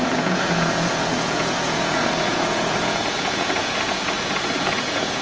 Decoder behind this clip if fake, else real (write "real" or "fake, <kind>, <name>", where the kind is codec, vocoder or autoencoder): fake, vocoder, Vocos